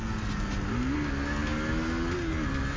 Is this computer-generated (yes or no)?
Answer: no